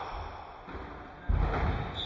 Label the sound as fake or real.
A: real